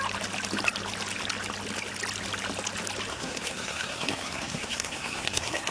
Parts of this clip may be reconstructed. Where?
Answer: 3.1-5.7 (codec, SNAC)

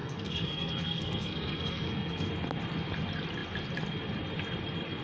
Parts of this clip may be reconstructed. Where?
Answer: 0.0-2.3 (codec, SNAC)

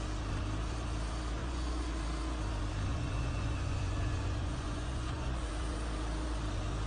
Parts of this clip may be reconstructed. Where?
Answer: 1.4-1.9 (vocoder, Vocos); 2.9-5.5

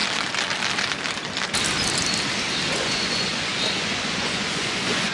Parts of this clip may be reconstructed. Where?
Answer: 2.7-5.1 (vocoder, Vocos)

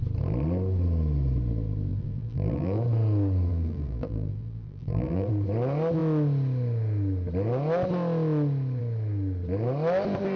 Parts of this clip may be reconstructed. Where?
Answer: 1.9-2.8 (vocoder, BigVGAN v2); 3.5-5.3

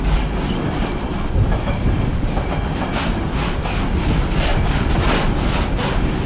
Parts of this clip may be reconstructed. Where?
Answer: 4.5-5.8 (vocoder, BigVGAN v2)